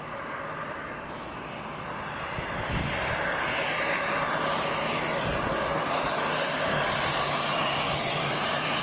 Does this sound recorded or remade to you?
recorded